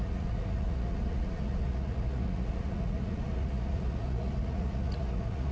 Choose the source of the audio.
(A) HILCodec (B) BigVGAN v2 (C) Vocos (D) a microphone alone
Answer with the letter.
C